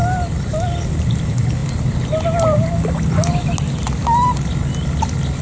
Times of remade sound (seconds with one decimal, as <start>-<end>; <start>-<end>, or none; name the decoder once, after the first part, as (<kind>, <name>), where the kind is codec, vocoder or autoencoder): none